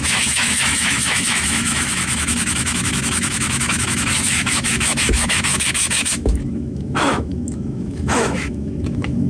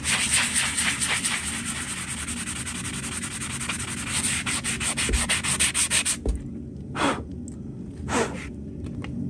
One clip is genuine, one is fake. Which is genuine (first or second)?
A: second